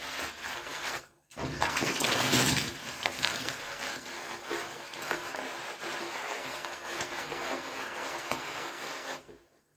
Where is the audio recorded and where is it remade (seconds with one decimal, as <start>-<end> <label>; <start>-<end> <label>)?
0.0-5.4 remade; 5.4-6.0 recorded; 6.0-9.8 remade